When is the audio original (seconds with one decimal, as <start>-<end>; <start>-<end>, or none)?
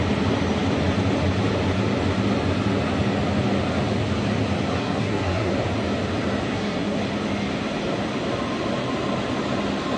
0.0-4.7; 5.5-6.5; 7.0-10.0